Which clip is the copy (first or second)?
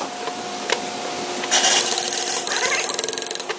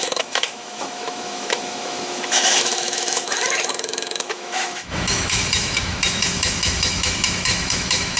second